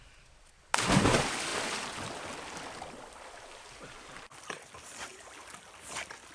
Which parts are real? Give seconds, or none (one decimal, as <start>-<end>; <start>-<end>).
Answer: 0.0-6.3